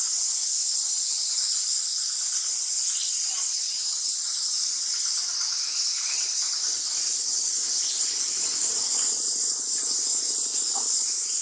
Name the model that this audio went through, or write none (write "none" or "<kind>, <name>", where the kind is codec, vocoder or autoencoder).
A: none